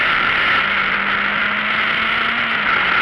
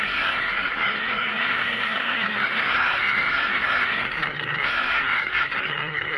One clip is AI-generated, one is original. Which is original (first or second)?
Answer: first